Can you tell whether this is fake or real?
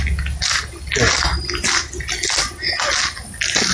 real